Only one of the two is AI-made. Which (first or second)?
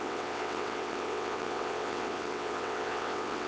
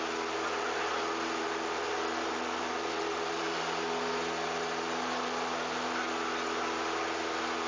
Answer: first